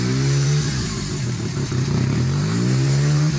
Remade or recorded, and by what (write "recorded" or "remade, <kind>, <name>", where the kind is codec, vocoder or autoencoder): remade, vocoder, BigVGAN v2